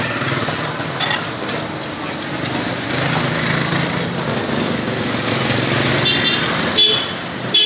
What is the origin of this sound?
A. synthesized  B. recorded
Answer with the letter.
B